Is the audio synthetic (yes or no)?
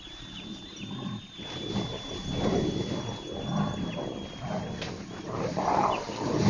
yes